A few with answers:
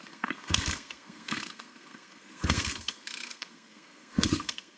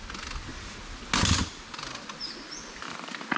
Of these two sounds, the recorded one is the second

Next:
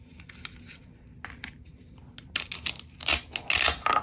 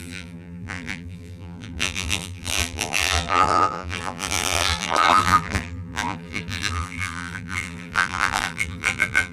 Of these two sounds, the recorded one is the first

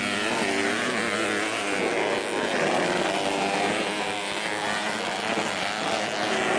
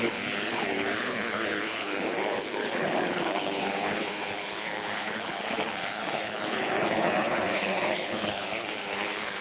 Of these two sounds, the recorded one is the first